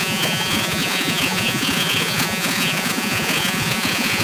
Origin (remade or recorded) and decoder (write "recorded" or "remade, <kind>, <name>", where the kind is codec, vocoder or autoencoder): remade, vocoder, Vocos